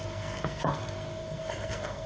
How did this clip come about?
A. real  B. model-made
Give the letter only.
B